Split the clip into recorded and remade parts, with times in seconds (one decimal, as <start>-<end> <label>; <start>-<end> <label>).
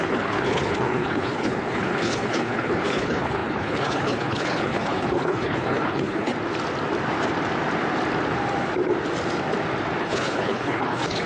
0.0-6.3 remade; 6.3-10.0 recorded; 10.0-11.3 remade